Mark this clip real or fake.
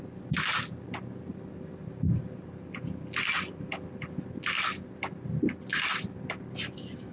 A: real